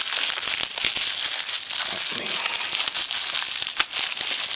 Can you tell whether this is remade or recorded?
recorded